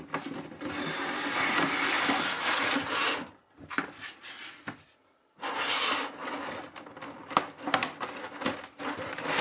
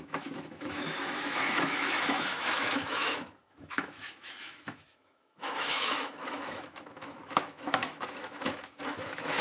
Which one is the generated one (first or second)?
second